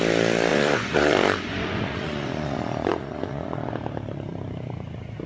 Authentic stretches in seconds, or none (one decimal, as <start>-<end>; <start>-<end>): 0.0-0.5; 3.7-5.3